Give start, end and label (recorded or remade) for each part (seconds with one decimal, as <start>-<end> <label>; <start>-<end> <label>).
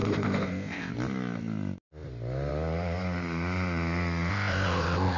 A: 0.0-0.9 remade; 0.9-4.3 recorded; 4.3-5.2 remade